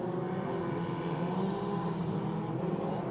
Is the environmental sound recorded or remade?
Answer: recorded